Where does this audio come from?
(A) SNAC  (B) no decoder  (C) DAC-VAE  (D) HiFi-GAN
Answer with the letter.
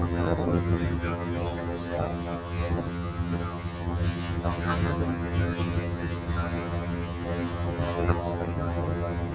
D